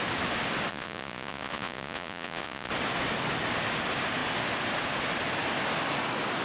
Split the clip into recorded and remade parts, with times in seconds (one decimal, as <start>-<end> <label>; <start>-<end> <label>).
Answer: 0.0-0.7 recorded; 0.7-2.7 remade; 2.7-6.4 recorded